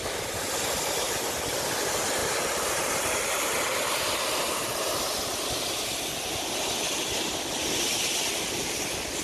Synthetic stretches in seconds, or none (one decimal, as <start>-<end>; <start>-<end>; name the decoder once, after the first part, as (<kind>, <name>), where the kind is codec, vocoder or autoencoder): 2.2-4.5 (vocoder, BigVGAN v2)